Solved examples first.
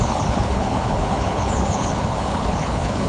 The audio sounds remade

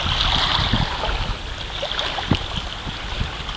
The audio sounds recorded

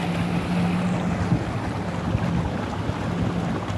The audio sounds recorded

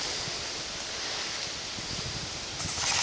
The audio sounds recorded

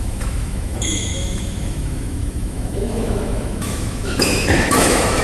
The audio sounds remade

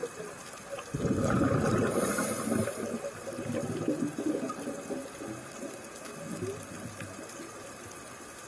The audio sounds remade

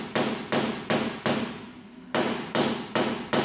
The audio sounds recorded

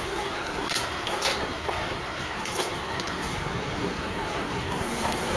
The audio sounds remade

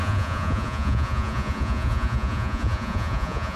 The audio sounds remade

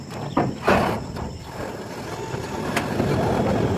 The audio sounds recorded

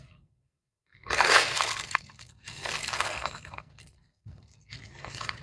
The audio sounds remade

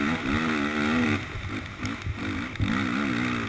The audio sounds recorded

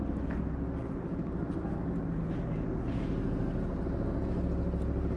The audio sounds recorded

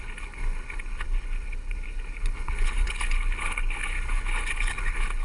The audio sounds remade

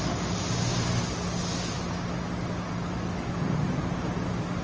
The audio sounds recorded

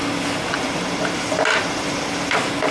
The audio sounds recorded